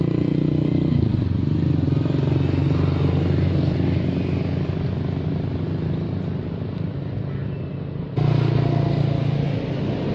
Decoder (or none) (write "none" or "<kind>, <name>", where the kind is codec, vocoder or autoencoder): none